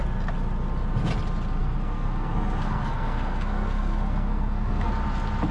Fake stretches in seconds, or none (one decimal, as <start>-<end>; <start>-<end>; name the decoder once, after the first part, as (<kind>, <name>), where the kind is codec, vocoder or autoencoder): 1.6-4.9 (codec, SNAC)